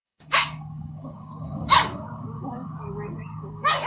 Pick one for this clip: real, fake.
fake